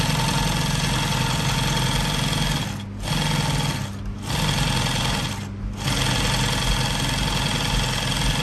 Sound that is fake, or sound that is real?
real